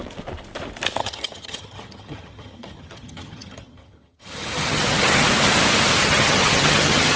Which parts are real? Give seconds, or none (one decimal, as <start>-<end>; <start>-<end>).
0.0-1.0; 5.3-6.0